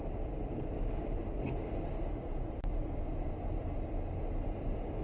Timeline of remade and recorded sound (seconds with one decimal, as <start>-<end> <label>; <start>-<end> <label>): 0.0-5.0 recorded